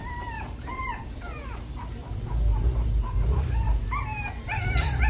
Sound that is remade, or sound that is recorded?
remade